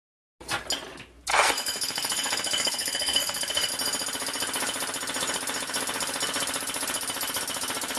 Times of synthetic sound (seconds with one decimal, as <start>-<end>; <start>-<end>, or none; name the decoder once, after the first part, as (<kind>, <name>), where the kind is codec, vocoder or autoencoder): 1.3-3.7 (codec, SNAC)